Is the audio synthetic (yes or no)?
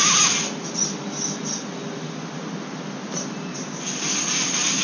no